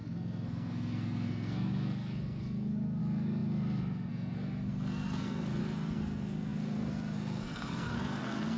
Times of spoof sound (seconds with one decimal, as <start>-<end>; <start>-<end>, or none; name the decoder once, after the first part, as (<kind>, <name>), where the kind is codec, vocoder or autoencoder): 0.0-8.6 (codec, SNAC)